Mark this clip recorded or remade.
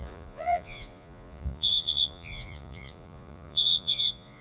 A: remade